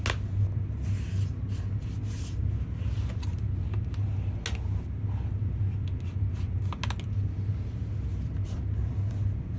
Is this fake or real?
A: real